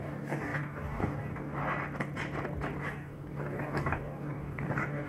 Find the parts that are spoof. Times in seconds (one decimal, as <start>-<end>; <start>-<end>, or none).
0.0-1.6; 2.8-5.1

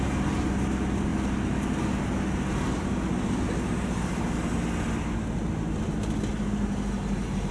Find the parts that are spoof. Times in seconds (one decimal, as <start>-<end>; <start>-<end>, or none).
none